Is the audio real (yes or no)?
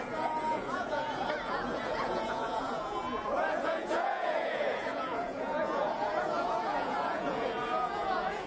no